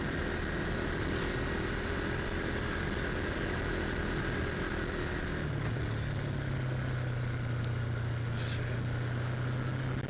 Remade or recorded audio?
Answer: recorded